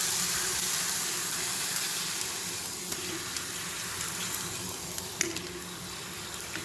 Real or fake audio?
fake